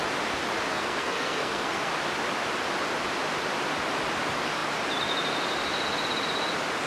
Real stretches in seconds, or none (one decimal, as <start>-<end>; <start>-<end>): 0.0-0.7; 1.9-6.9